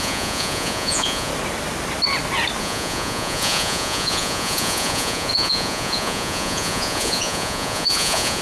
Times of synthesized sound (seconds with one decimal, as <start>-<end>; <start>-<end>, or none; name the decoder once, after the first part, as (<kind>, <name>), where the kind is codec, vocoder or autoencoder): 0.0-1.3 (vocoder, Vocos); 2.6-8.4